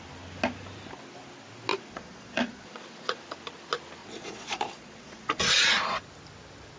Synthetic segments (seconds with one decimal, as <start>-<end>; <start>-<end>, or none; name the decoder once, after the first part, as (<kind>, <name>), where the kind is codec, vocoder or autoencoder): 1.7-3.2 (vocoder, Vocos); 4.0-6.0